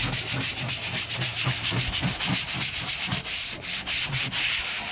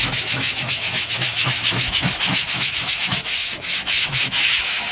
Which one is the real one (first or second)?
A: first